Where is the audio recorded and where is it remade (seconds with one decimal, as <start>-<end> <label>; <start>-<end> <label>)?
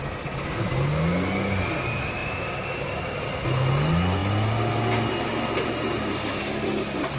0.0-7.2 recorded